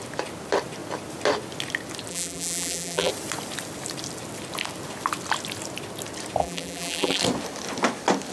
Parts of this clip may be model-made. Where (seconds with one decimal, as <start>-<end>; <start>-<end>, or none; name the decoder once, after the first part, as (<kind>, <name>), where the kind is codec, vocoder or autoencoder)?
2.1-3.1 (vocoder, BigVGAN v2); 6.4-7.2